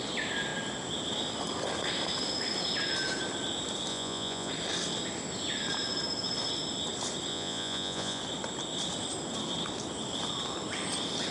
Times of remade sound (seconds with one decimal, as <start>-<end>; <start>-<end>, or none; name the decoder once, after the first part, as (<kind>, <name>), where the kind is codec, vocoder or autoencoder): 3.9-4.5 (vocoder, Vocos); 7.3-8.2